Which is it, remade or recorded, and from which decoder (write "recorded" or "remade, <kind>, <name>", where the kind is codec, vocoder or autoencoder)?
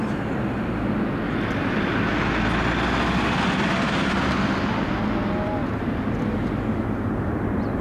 recorded